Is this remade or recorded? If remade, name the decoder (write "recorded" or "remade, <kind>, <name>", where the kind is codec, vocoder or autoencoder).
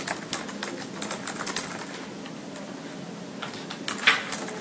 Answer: recorded